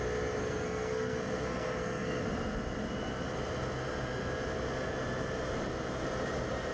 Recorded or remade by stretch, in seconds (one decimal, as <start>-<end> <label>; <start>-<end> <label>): 0.0-0.4 recorded; 0.4-2.2 remade; 2.2-6.7 recorded